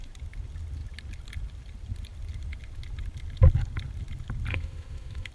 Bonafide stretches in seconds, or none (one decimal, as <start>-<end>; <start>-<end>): 0.0-4.5